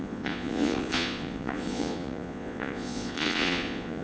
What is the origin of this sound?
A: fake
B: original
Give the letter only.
A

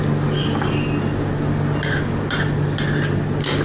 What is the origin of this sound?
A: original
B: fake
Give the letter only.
A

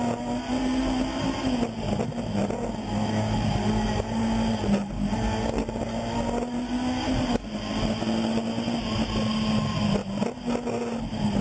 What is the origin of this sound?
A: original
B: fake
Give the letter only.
A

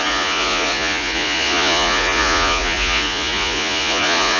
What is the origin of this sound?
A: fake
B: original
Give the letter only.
A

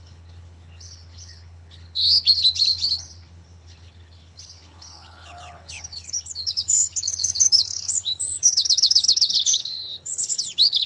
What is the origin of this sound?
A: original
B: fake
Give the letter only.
B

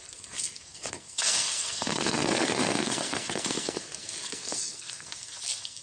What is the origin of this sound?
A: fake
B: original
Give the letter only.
A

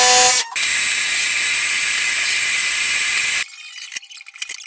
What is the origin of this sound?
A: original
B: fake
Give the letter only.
A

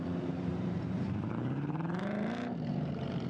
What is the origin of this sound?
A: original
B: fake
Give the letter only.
B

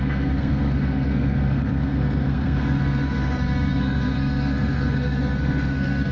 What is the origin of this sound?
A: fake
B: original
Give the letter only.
A